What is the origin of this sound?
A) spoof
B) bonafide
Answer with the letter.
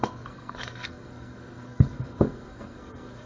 A